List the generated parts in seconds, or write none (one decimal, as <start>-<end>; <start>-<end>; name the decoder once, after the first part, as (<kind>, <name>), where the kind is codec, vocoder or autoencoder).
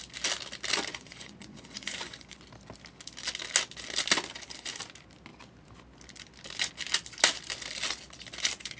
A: 0.9-2.4 (vocoder, Vocos)